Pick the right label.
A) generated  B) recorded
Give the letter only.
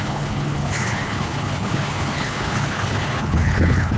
A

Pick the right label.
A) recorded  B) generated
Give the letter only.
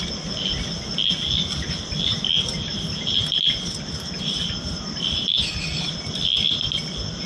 A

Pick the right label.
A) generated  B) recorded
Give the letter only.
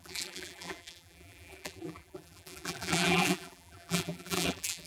A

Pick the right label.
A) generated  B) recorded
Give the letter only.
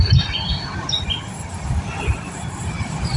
B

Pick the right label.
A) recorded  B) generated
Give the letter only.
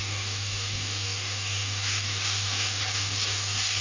B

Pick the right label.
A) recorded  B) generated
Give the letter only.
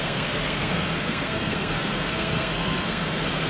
B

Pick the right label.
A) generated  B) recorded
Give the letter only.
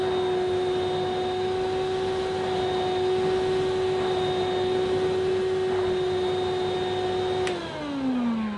B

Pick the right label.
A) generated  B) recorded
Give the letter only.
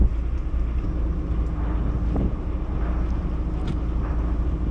B